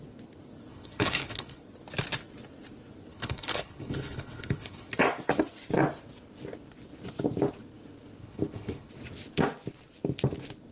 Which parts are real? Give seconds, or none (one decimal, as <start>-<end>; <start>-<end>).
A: 0.0-0.7; 1.6-3.1; 4.9-8.2; 8.9-10.7

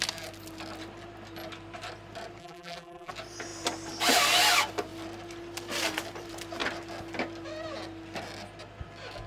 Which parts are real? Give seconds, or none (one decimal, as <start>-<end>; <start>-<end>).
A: 0.0-2.4; 3.1-9.3